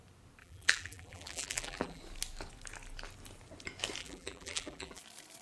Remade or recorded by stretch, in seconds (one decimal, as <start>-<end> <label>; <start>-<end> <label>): 0.0-0.4 recorded; 0.4-2.0 remade; 2.0-4.0 recorded; 4.0-5.0 remade; 5.0-5.4 recorded